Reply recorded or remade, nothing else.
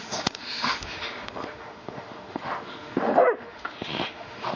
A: remade